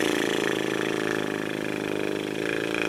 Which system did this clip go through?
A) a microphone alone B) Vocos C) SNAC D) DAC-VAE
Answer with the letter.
A